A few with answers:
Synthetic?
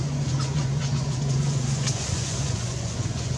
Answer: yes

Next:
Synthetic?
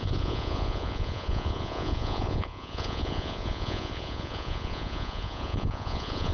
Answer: yes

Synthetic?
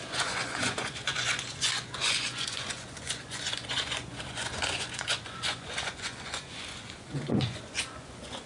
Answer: yes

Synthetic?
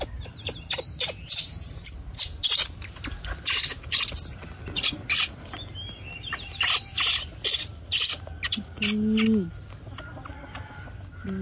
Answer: no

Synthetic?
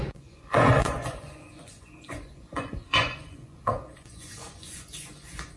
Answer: yes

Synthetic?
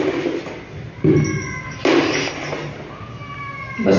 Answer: no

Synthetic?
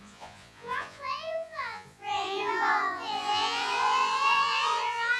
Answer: yes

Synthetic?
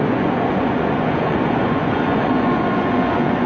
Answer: yes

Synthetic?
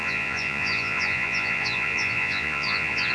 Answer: yes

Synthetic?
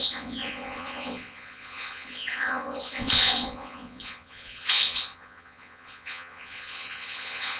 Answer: yes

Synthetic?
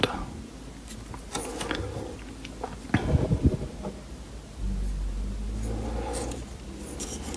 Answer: no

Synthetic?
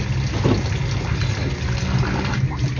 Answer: no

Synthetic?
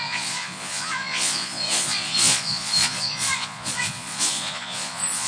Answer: yes